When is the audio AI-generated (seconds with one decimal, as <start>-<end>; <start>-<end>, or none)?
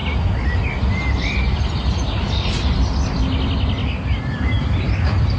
4.1-5.4